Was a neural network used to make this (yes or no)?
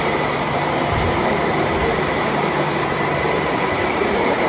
yes